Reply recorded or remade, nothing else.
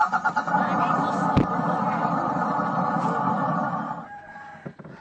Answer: recorded